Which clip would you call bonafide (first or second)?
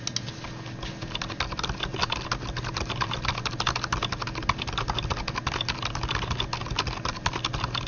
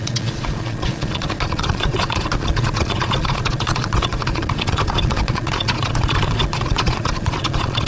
first